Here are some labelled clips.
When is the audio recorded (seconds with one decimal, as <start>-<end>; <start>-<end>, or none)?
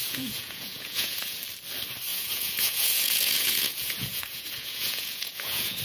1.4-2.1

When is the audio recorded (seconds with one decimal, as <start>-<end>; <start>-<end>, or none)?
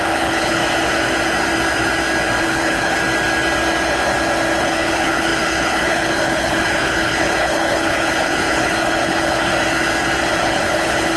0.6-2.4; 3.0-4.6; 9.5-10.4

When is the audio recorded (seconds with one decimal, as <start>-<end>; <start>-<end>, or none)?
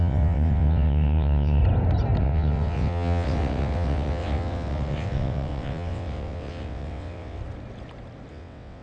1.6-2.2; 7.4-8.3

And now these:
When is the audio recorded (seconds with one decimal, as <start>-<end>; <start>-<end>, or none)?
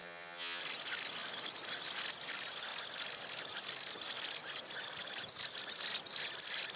0.6-6.8